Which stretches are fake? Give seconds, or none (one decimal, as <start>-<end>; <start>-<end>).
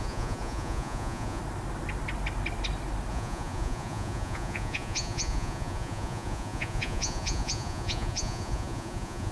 0.0-1.4; 3.1-9.3